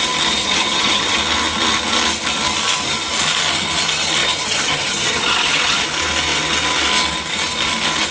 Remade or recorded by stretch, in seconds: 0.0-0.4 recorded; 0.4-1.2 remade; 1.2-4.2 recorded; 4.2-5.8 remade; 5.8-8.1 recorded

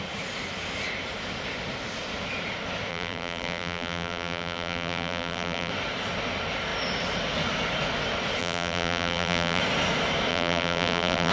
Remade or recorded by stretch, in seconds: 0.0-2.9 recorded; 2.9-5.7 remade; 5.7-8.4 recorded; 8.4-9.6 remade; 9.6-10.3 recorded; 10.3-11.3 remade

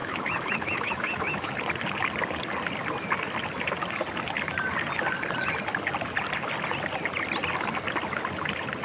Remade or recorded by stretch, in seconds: 0.0-1.5 remade; 1.5-8.8 recorded